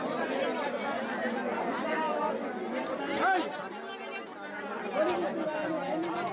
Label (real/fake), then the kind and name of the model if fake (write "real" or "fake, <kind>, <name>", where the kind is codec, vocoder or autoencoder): real